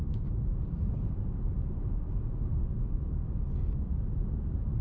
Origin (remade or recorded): remade